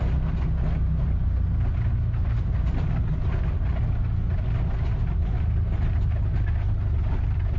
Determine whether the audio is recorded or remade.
recorded